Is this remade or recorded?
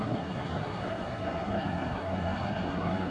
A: remade